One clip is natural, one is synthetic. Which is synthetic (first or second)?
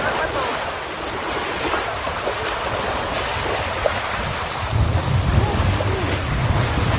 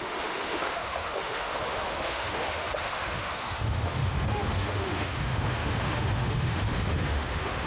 second